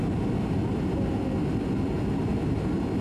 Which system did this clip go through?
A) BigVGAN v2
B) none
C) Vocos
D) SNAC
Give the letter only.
B